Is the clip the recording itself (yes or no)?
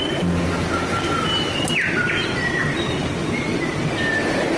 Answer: yes